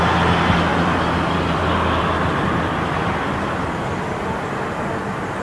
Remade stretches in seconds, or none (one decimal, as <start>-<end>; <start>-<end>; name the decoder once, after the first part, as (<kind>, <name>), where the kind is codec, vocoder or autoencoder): 0.7-3.9 (vocoder, BigVGAN v2)